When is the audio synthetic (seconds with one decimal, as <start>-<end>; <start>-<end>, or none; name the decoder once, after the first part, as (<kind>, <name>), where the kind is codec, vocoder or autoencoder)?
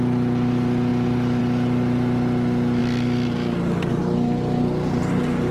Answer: none